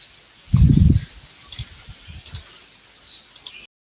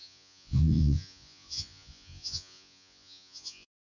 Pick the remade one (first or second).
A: second